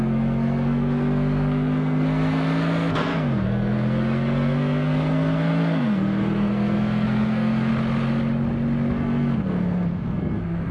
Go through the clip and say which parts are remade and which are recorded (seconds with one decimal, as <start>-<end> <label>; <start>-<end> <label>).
0.0-7.7 remade; 7.7-8.9 recorded; 8.9-10.7 remade